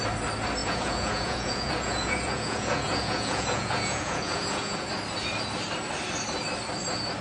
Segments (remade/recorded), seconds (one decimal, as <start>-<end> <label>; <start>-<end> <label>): 0.0-0.6 recorded; 0.6-4.9 remade; 4.9-7.2 recorded